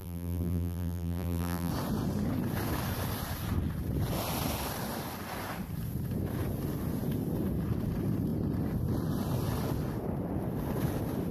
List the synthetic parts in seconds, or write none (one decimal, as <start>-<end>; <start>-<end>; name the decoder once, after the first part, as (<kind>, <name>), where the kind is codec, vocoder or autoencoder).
0.0-1.7 (vocoder, BigVGAN v2)